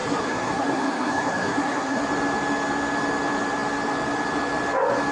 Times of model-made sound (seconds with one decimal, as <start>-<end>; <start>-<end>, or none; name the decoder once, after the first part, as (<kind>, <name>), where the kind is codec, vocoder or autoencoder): 0.0-2.0 (codec, SNAC)